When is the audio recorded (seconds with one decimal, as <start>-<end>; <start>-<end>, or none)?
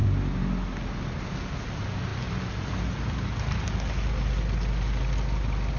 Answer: 0.0-5.8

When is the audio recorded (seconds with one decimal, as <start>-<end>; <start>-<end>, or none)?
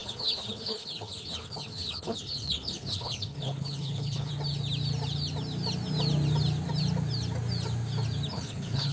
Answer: 4.3-8.3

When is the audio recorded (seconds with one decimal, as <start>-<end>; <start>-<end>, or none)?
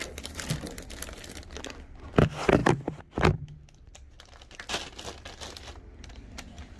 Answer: 0.0-6.8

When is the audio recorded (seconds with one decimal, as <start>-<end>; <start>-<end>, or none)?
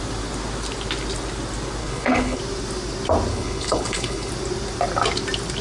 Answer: 0.0-1.8; 2.4-3.3; 4.3-5.6